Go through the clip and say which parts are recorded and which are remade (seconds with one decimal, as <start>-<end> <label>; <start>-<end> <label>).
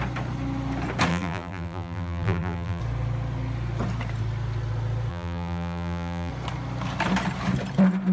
0.0-1.1 recorded; 1.1-2.8 remade; 2.8-5.1 recorded; 5.1-6.3 remade; 6.3-8.1 recorded